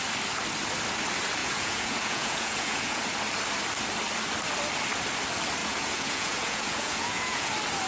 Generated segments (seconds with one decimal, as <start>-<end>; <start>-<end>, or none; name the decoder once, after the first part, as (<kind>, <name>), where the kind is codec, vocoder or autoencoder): 1.4-3.0 (vocoder, Vocos); 5.6-7.5